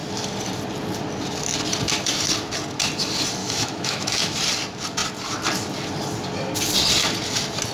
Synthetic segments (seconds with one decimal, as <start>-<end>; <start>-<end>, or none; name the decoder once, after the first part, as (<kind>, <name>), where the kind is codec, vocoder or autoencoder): 3.4-4.4 (autoencoder, DAC-VAE)